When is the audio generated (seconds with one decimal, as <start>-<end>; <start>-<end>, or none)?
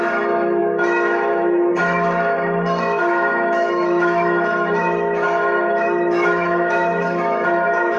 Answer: 0.0-8.0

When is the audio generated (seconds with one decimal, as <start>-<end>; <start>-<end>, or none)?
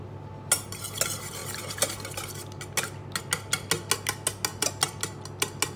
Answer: none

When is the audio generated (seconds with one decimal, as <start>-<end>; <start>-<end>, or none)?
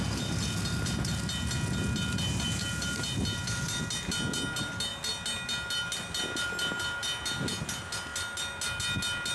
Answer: none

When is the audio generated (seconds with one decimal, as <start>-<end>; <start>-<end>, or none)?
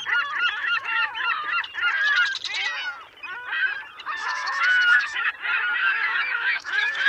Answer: 0.6-1.3; 4.2-5.3; 5.8-7.1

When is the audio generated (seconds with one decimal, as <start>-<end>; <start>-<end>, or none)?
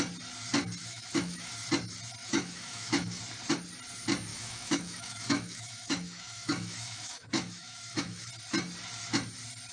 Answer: 0.8-1.5; 2.2-3.2; 4.3-8.3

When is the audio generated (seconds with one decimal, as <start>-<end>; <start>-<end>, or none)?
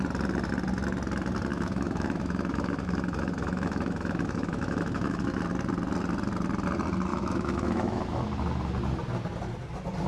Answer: 1.5-5.4; 7.1-8.0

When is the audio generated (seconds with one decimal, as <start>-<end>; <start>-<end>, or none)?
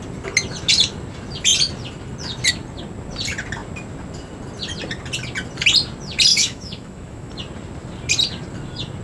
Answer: 6.3-7.3